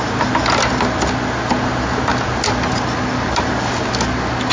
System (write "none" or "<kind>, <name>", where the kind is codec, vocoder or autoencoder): none